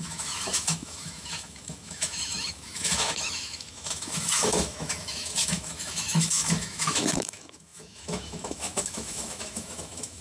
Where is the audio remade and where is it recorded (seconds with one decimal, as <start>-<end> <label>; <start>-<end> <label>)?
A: 0.0-10.2 remade